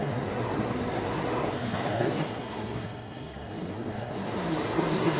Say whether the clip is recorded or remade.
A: remade